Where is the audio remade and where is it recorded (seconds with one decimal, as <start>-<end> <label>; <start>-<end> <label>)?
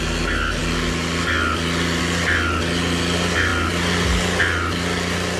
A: 0.0-5.4 recorded